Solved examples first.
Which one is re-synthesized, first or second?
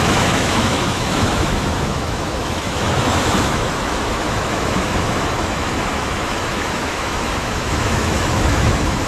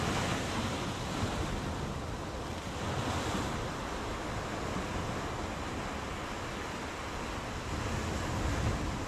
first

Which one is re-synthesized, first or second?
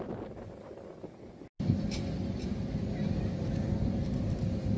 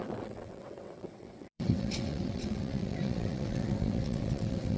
second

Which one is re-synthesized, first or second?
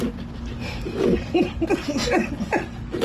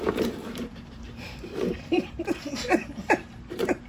second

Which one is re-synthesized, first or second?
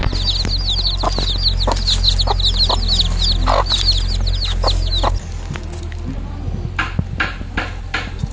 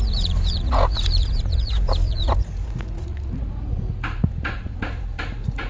second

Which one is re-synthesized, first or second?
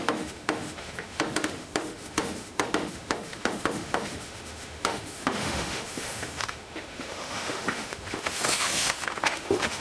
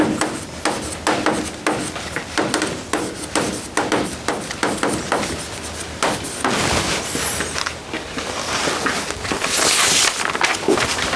first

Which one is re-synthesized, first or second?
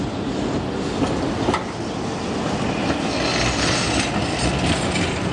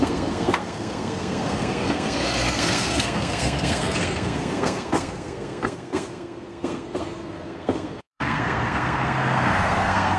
second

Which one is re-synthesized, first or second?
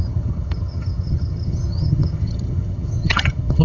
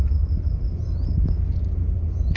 first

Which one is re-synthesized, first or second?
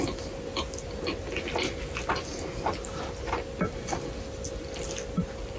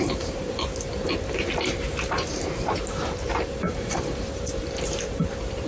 second